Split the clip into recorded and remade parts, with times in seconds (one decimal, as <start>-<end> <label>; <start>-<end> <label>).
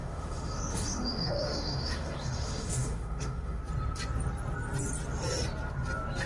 0.0-3.6 remade; 3.6-6.3 recorded